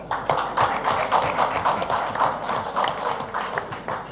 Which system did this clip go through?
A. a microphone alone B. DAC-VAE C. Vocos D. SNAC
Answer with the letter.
A